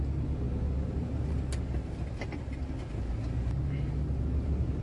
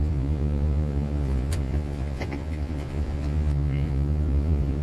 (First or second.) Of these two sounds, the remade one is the second